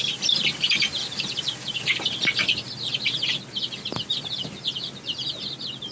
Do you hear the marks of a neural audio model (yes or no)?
yes